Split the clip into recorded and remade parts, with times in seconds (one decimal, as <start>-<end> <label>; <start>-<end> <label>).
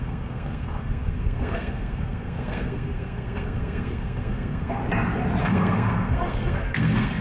0.0-4.8 remade; 4.8-5.4 recorded; 5.4-7.2 remade